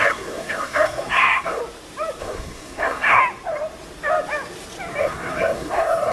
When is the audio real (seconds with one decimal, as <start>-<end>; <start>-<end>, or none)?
1.6-2.2; 3.2-5.0